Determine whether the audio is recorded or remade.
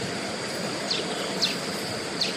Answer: remade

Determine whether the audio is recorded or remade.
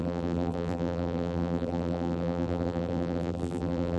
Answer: remade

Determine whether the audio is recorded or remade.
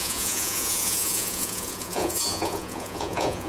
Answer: remade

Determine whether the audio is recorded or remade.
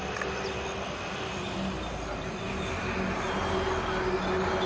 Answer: recorded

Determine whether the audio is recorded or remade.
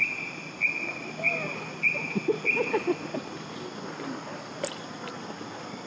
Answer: recorded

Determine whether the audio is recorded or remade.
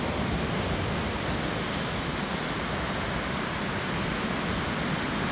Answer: recorded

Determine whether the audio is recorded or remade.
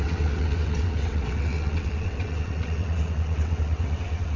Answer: remade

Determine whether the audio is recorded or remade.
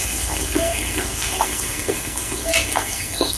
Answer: remade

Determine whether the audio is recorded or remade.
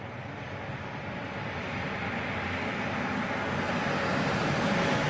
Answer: recorded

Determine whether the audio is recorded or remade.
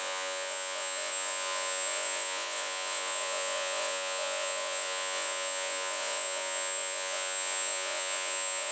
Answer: remade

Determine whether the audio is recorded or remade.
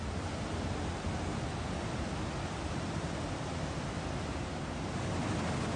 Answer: recorded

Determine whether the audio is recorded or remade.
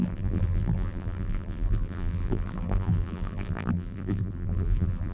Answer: remade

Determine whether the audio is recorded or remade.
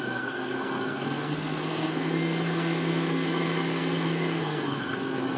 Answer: remade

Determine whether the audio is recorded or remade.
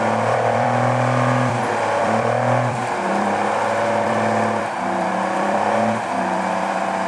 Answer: remade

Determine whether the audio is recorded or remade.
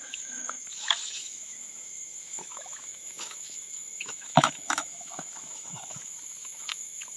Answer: remade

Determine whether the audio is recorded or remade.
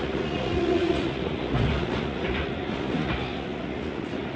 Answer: remade